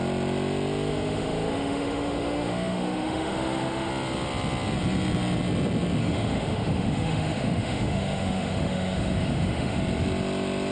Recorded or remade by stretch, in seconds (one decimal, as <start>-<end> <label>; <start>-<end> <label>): 0.0-0.9 recorded; 0.9-3.9 remade; 3.9-6.0 recorded; 6.0-9.8 remade; 9.8-10.7 recorded